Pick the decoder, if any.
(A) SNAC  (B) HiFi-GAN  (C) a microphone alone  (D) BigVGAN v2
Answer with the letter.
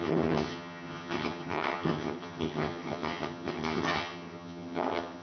B